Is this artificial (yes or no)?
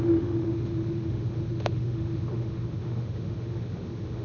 yes